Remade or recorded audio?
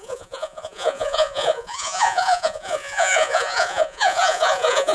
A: remade